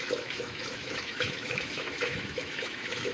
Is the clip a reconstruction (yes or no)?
yes